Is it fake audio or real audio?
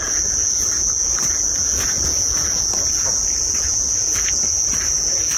fake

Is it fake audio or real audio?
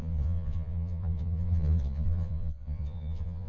fake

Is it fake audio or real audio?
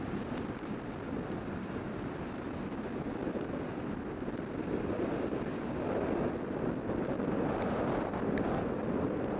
real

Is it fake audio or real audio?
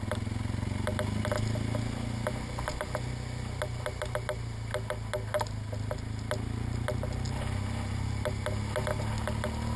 real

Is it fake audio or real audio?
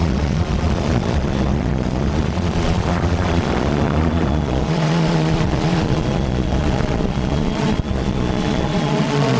fake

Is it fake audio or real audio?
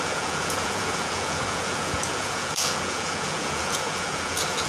fake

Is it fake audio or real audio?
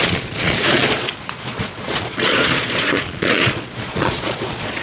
fake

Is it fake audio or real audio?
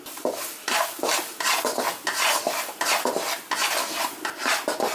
real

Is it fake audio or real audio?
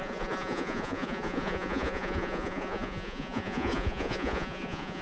fake